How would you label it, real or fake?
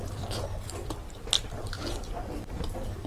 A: fake